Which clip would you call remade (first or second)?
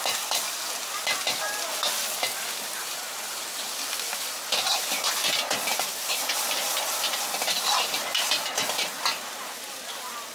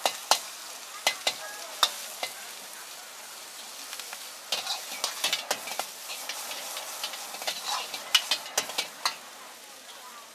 first